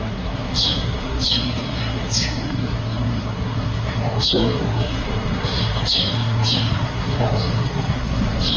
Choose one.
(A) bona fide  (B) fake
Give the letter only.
B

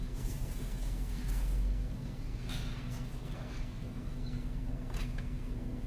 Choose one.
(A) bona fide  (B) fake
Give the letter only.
B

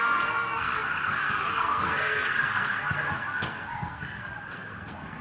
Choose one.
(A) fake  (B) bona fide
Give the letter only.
A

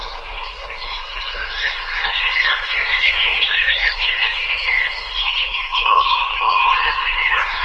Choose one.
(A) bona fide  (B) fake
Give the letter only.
B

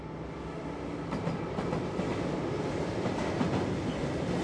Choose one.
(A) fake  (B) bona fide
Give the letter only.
B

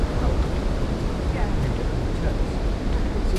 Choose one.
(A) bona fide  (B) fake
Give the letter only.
A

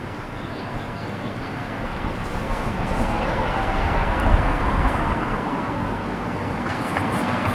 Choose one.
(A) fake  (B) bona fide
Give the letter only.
A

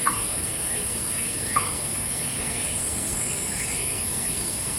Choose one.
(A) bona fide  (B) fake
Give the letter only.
B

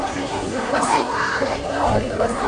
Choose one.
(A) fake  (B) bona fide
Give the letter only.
A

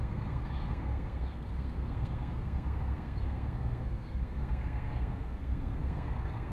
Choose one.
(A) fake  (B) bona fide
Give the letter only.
A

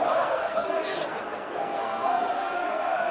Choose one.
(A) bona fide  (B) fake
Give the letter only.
B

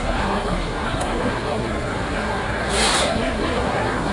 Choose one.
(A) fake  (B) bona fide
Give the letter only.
A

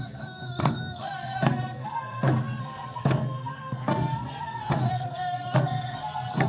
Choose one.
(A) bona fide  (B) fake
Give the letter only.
B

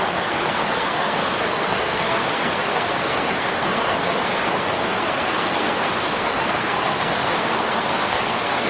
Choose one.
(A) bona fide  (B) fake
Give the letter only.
B